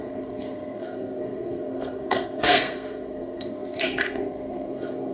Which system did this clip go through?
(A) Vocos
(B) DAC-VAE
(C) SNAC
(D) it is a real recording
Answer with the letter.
C